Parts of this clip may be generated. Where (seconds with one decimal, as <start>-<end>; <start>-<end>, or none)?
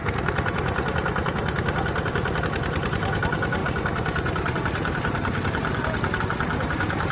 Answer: none